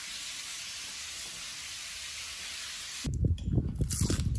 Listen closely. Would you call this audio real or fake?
real